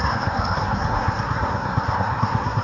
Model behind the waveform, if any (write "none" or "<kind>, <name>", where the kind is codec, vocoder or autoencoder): codec, SNAC